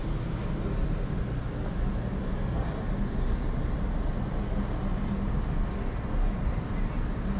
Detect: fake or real real